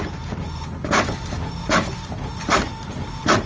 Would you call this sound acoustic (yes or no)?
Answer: yes